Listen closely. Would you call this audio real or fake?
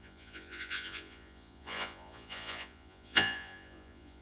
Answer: fake